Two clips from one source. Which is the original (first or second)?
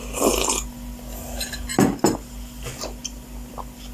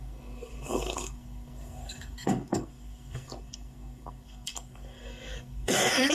first